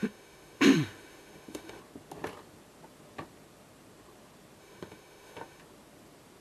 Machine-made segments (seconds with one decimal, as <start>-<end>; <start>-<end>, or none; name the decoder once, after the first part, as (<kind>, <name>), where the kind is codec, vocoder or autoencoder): 0.0-1.8 (autoencoder, DAC-VAE); 4.6-5.6